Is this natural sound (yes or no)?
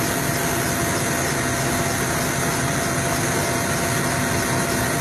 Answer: yes